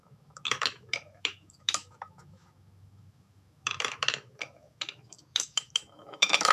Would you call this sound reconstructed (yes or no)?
yes